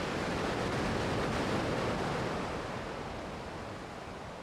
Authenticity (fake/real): real